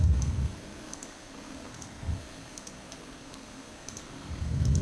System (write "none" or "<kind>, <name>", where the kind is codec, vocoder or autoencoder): codec, SNAC